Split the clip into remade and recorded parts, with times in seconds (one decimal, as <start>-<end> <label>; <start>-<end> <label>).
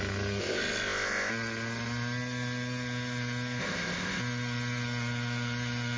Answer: 0.0-0.4 recorded; 0.4-1.3 remade; 1.3-3.6 recorded; 3.6-4.2 remade; 4.2-6.0 recorded